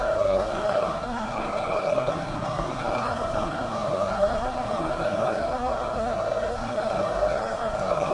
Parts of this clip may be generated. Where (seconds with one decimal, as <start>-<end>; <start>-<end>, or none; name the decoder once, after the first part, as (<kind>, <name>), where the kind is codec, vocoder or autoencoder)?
0.0-8.1 (codec, SNAC)